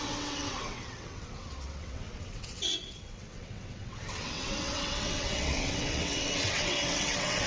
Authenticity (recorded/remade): remade